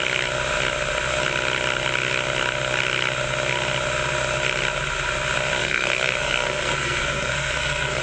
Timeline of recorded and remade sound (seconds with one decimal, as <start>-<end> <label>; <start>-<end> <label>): 0.0-5.6 recorded; 5.6-8.0 remade